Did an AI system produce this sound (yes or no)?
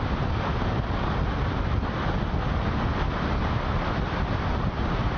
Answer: no